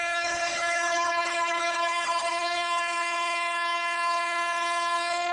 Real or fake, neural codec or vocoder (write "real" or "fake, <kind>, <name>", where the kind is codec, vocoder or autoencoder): fake, codec, HILCodec